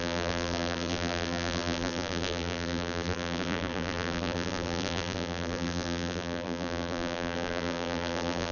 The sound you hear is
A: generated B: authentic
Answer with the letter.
A